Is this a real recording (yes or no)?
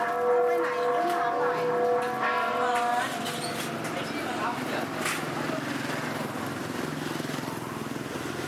yes